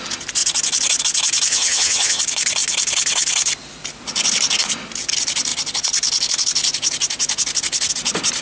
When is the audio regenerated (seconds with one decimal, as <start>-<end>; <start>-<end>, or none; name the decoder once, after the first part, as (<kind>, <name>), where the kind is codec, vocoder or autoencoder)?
1.5-2.2 (vocoder, HiFi-GAN)